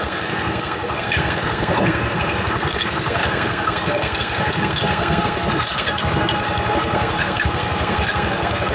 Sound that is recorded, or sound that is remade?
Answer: remade